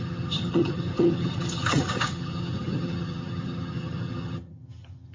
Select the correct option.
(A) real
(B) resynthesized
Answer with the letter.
B